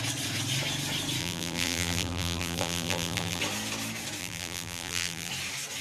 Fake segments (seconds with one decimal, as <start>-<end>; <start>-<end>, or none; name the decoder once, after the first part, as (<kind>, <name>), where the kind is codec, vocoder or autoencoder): 1.2-3.4 (vocoder, BigVGAN v2); 4.2-5.3